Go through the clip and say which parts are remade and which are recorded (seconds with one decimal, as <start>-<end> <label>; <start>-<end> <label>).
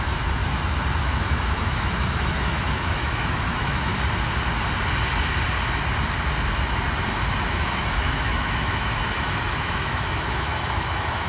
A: 0.0-0.4 remade; 0.4-1.0 recorded; 1.0-3.9 remade; 3.9-7.4 recorded; 7.4-11.3 remade